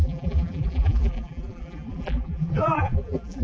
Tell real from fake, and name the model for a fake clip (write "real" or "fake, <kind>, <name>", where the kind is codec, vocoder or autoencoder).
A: fake, vocoder, BigVGAN v2